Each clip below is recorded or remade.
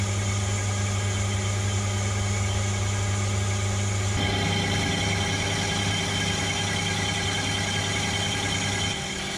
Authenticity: recorded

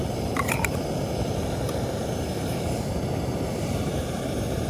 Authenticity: remade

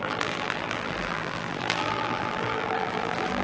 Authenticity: remade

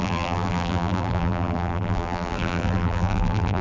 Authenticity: remade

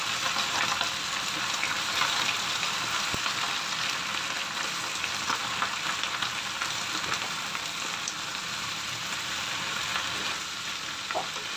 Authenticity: recorded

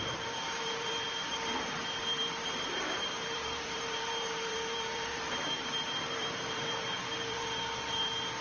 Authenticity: remade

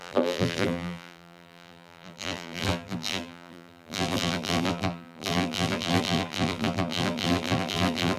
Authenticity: remade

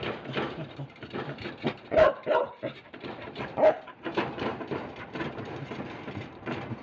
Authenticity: remade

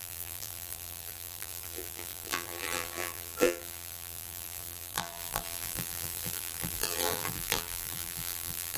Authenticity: remade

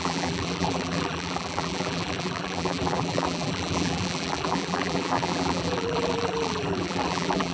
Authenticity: remade